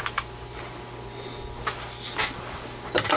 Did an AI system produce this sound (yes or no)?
no